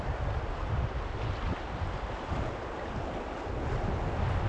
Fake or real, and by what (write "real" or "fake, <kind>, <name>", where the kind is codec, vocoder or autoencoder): real